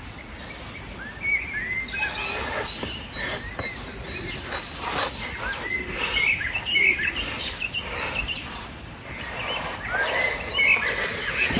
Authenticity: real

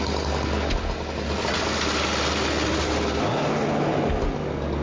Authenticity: real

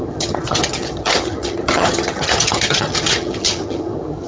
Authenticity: fake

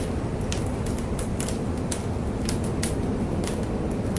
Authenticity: real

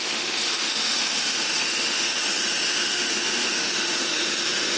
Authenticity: fake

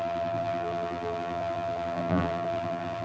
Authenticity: fake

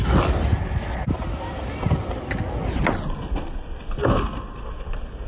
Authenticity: real